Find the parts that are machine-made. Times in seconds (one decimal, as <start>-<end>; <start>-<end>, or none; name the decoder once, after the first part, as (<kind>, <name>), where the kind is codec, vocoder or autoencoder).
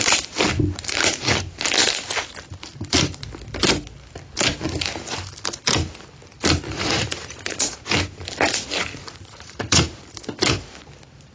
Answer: 6.7-7.9 (vocoder, Vocos); 8.9-10.0